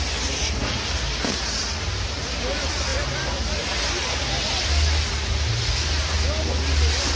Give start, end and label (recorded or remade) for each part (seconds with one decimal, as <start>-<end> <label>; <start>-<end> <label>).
0.0-7.2 recorded